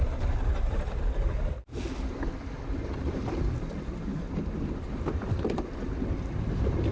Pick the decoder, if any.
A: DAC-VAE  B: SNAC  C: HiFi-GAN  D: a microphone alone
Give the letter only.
D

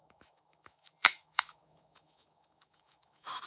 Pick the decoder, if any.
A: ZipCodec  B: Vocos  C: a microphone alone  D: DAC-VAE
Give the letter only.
D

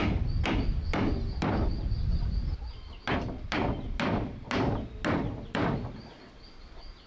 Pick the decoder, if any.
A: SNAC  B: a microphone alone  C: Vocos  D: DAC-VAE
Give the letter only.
B